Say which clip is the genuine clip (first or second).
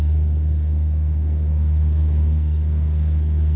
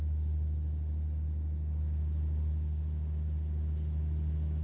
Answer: second